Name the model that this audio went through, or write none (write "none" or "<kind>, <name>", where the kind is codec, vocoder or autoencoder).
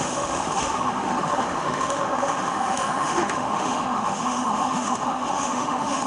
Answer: autoencoder, DAC-VAE